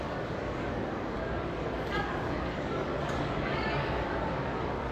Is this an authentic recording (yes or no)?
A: no